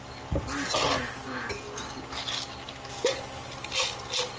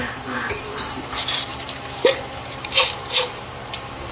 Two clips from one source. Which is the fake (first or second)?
second